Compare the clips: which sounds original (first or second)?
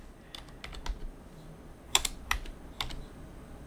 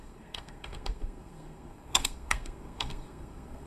first